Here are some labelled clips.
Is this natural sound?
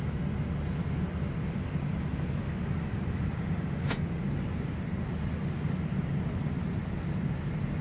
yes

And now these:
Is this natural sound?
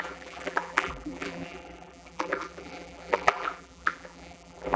no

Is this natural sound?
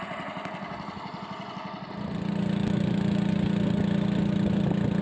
yes